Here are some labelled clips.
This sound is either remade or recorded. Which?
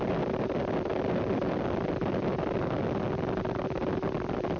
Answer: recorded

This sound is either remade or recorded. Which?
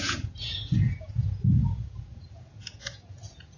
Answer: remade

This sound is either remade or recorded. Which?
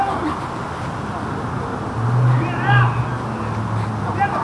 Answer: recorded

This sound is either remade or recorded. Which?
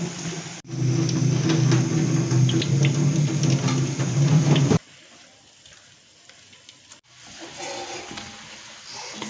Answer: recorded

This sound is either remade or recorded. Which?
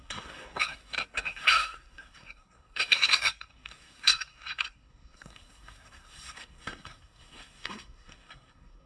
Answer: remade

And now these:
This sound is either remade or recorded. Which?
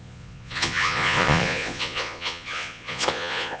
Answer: remade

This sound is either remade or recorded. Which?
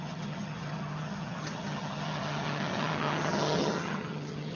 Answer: remade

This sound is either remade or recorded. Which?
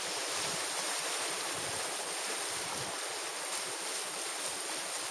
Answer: recorded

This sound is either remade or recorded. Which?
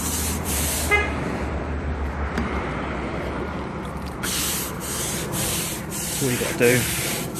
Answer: remade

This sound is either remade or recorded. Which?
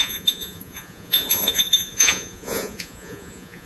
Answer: remade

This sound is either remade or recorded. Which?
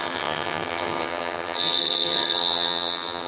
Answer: remade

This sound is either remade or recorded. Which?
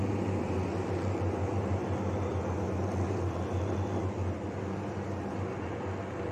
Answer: recorded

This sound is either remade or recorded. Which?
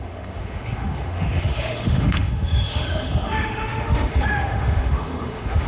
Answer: remade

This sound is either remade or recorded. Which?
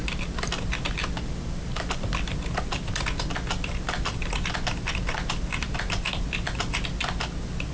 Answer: recorded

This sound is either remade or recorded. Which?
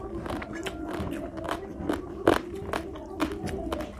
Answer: recorded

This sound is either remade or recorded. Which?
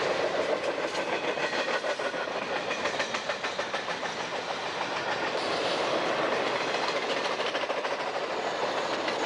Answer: recorded